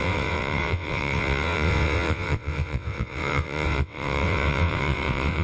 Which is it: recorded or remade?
remade